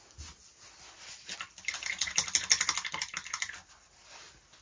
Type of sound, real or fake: real